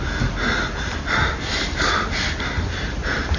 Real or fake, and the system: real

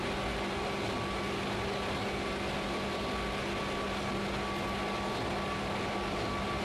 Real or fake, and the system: real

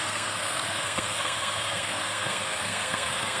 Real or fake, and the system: fake, codec, SNAC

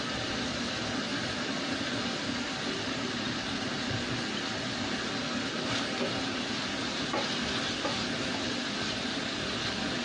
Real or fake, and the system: real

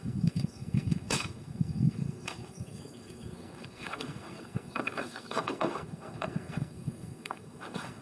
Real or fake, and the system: fake, codec, SNAC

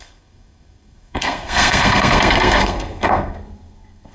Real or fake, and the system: fake, codec, SNAC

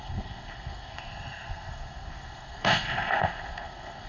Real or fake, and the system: fake, codec, SNAC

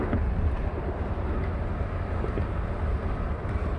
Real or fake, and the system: real